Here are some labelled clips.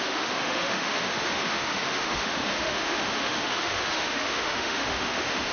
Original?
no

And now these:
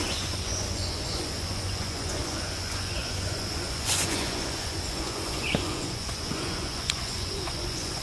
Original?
no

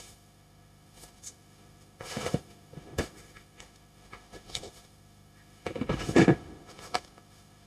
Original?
no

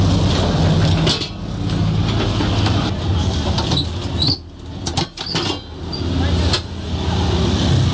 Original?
yes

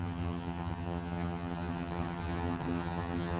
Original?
no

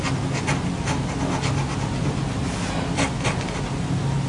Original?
yes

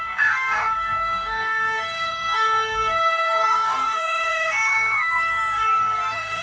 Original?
no